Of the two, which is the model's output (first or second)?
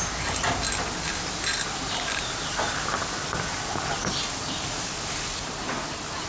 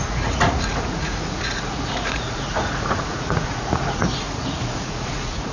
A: second